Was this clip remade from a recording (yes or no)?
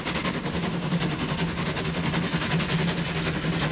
no